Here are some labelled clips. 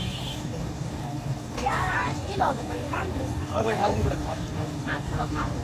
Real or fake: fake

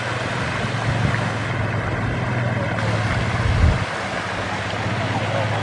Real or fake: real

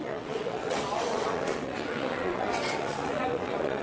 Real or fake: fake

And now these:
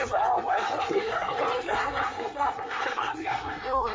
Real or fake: fake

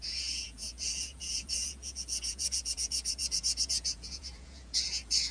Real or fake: fake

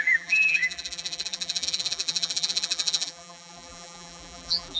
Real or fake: fake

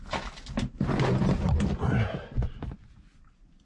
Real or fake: real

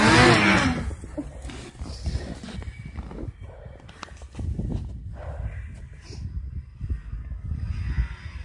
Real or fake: real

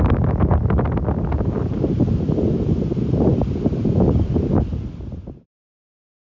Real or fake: real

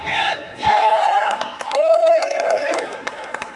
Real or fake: fake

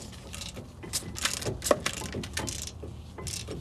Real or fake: real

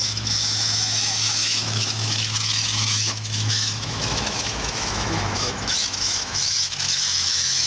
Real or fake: fake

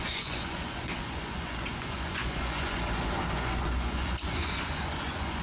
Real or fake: fake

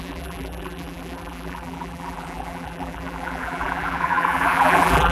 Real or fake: fake